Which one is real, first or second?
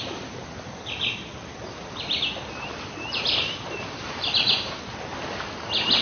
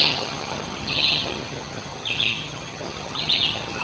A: first